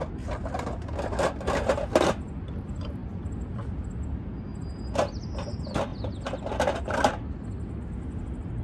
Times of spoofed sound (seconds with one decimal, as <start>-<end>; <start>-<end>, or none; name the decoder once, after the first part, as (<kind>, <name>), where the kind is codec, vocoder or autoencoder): none